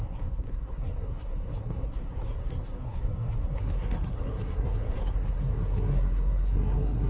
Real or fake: fake